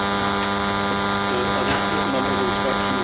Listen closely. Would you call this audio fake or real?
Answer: real